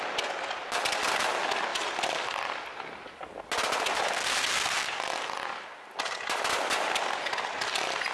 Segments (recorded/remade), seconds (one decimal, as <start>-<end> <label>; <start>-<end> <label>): 0.0-8.1 recorded